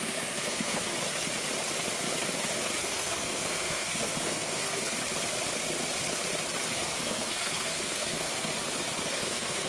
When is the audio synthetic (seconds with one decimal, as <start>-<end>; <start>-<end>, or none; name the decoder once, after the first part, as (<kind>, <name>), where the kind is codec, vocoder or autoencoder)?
0.0-0.9 (codec, SNAC); 2.8-5.0; 6.7-8.5; 9.1-9.7